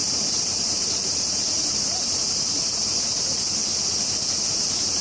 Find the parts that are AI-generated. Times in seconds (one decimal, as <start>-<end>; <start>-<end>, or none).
0.0-3.6; 4.5-5.0